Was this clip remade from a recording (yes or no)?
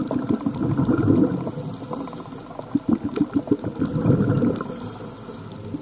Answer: no